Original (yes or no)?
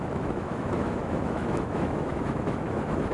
no